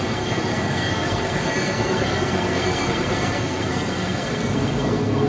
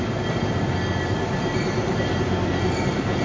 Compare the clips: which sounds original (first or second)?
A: second